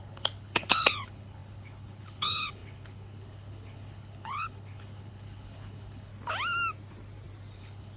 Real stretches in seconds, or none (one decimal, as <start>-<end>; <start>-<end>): 6.1-7.6